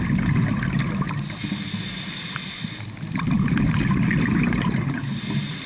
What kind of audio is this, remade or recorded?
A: recorded